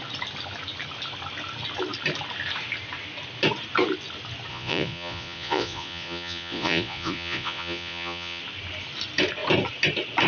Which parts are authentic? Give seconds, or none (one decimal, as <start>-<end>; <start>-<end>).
0.0-4.5; 8.4-10.3